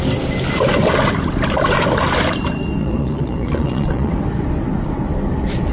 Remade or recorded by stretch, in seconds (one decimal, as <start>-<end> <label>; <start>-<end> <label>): 0.0-2.8 recorded; 2.8-4.1 remade; 4.1-5.7 recorded